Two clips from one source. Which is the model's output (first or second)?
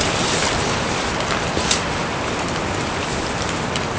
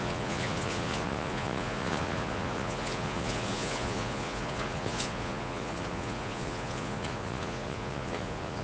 second